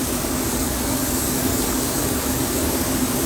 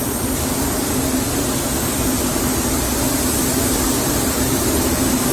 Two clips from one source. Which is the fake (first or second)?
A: first